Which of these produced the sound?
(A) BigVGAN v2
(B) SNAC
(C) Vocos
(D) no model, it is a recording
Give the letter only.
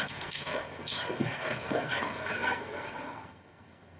B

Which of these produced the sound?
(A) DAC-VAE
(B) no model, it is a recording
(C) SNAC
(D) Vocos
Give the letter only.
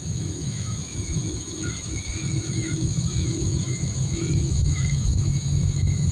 A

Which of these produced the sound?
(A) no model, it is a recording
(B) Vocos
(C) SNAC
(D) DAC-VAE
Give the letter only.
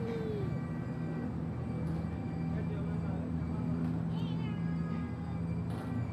A